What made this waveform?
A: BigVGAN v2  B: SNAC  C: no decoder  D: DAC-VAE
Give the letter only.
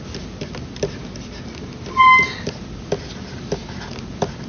C